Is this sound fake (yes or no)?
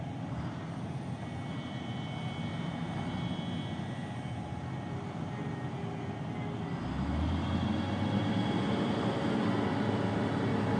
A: no